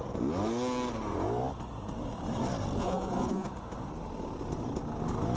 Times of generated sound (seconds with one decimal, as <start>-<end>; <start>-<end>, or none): 2.8-3.5